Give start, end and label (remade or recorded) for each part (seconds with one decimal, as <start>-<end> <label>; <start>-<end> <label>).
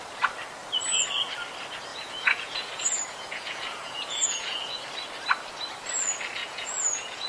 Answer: 0.0-1.9 recorded; 1.9-4.8 remade; 4.8-6.4 recorded; 6.4-7.3 remade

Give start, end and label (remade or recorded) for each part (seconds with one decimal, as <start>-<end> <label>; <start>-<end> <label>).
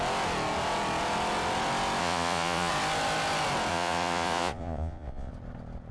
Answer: 0.0-2.0 recorded; 2.0-2.7 remade; 2.7-3.7 recorded; 3.7-5.3 remade; 5.3-5.9 recorded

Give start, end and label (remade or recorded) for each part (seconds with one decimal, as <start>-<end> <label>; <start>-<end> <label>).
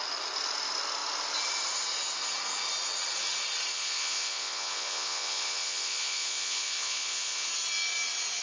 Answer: 0.0-3.7 recorded; 3.7-7.5 remade; 7.5-8.4 recorded